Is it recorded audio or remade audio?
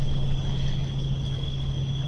remade